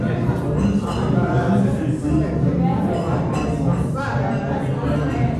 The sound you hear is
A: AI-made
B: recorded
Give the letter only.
B